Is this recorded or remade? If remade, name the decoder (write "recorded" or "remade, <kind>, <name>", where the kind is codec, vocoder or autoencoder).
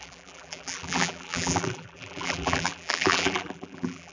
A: remade, vocoder, BigVGAN v2